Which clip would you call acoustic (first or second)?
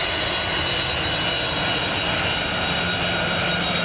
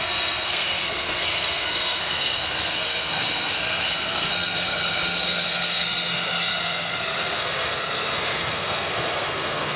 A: first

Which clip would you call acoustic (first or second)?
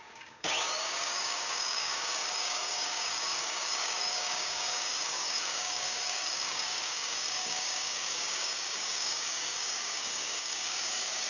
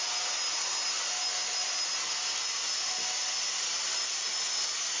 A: second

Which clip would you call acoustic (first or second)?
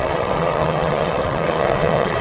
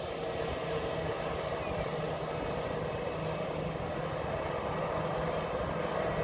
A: second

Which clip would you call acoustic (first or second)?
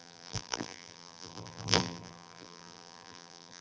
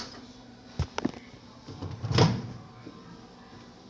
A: second